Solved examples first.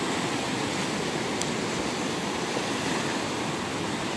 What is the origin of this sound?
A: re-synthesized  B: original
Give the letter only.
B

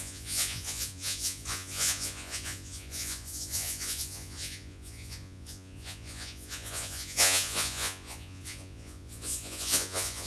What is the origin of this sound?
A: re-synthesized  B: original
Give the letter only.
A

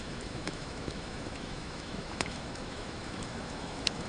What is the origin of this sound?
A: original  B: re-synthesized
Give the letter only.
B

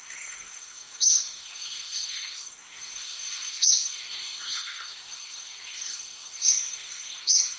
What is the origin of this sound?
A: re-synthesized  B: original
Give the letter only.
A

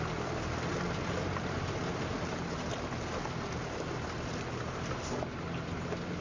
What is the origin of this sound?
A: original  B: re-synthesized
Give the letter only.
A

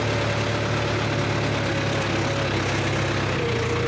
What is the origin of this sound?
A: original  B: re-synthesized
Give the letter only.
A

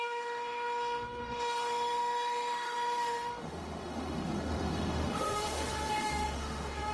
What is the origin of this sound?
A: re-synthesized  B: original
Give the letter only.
A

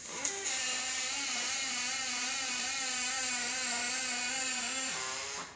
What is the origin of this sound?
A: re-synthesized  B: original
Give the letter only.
A